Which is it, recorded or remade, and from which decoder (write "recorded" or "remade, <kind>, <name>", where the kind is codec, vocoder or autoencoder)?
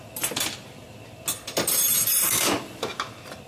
recorded